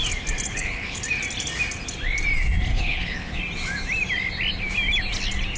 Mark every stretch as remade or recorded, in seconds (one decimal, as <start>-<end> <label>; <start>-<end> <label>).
0.0-0.5 recorded; 0.5-1.0 remade; 1.0-2.7 recorded; 2.7-3.4 remade; 3.4-5.6 recorded